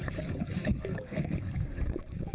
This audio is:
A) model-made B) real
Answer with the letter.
A